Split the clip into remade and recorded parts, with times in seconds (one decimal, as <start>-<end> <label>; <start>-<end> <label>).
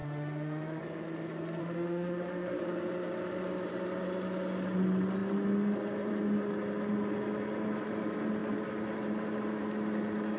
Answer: 0.0-0.8 remade; 0.8-1.6 recorded; 1.6-2.6 remade; 2.6-10.4 recorded